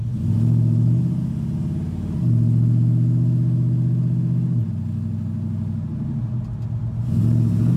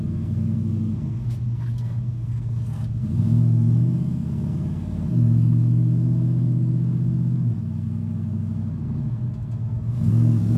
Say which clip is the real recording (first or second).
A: first